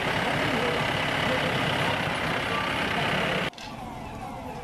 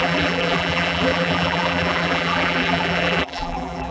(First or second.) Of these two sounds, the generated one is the second